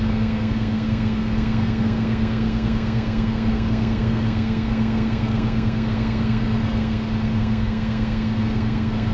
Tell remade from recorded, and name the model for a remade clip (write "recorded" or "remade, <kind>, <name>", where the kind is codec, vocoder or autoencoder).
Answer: remade, codec, SNAC